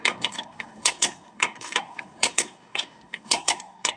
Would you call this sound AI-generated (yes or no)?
yes